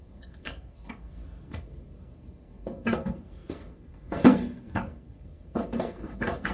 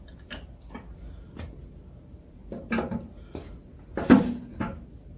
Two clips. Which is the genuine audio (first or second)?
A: second